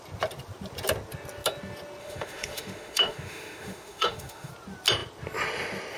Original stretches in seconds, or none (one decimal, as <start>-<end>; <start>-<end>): 0.0-2.0; 4.5-6.0